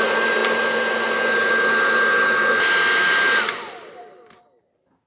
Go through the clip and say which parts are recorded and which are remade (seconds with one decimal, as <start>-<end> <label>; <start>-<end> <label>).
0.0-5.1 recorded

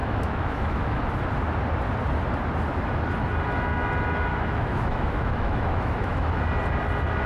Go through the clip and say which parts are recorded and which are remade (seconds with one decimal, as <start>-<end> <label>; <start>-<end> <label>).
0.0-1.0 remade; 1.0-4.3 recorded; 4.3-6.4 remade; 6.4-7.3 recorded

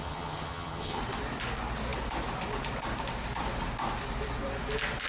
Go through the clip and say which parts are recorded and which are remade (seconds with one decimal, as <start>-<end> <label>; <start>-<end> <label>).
0.0-1.0 remade; 1.0-5.1 recorded